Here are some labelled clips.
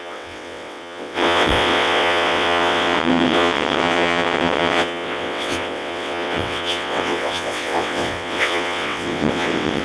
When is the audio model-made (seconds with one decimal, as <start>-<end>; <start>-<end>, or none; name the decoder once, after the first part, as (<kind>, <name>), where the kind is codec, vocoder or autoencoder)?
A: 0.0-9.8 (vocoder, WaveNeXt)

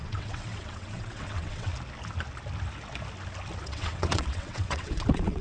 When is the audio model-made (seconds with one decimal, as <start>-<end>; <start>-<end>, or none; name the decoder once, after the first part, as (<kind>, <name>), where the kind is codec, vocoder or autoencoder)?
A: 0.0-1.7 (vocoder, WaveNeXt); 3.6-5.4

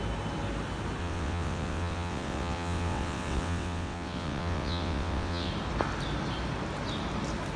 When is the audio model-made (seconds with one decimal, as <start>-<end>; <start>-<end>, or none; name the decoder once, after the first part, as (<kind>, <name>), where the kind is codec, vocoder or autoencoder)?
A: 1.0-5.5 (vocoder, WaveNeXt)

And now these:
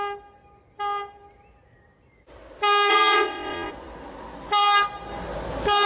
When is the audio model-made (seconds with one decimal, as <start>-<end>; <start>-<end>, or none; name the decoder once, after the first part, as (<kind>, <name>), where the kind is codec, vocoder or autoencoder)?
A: 2.9-3.7 (vocoder, WaveNeXt)

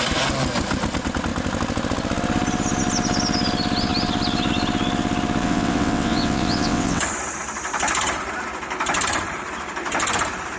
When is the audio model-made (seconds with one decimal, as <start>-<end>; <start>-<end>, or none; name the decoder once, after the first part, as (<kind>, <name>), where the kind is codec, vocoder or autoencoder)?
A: 5.4-7.0 (vocoder, WaveNeXt)